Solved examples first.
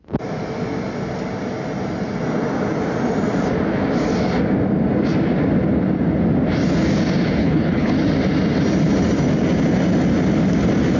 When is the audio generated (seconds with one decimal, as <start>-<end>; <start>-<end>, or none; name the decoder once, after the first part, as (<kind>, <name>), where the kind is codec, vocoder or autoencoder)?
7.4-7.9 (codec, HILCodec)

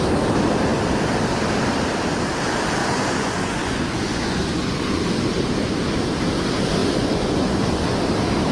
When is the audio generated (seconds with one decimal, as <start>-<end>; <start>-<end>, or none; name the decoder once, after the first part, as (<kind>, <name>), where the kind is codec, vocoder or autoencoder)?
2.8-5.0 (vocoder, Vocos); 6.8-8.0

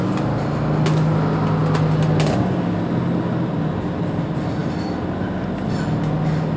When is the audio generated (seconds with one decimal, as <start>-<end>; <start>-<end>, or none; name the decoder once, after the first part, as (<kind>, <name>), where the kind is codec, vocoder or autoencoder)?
none

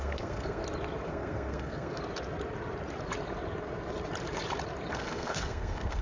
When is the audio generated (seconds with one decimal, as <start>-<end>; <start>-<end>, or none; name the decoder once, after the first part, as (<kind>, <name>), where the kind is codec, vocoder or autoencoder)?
0.0-0.6 (codec, SNAC); 1.1-2.0; 4.9-6.0